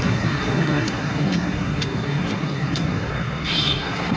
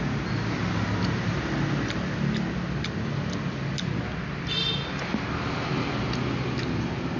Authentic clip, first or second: second